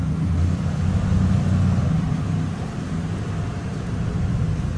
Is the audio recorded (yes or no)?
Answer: yes